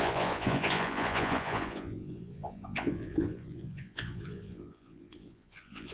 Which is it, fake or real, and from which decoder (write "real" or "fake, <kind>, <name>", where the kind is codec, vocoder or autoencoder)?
fake, vocoder, Vocos